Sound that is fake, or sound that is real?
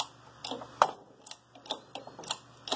real